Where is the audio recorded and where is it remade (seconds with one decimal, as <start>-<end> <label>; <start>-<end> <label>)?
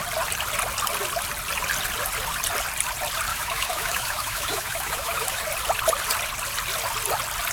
0.0-3.3 recorded; 3.3-5.4 remade; 5.4-7.5 recorded